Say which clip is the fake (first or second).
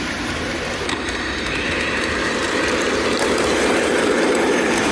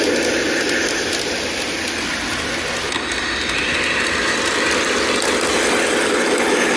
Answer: first